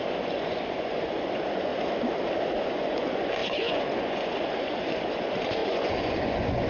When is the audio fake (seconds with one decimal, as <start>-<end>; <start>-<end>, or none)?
0.0-1.7; 2.6-6.7